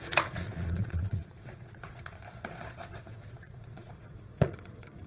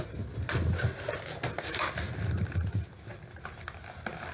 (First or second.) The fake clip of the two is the first